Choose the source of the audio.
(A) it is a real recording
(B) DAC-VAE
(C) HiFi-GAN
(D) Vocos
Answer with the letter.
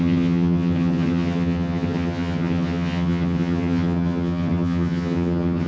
C